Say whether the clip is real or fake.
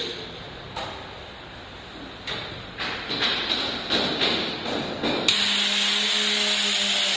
real